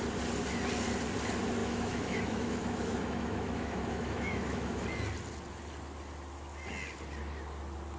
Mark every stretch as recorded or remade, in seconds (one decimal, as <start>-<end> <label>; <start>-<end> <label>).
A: 0.0-1.6 recorded; 1.6-4.8 remade; 4.8-8.0 recorded